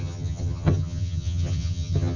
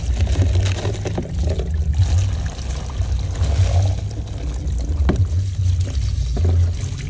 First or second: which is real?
second